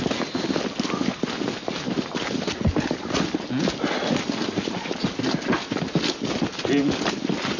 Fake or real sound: real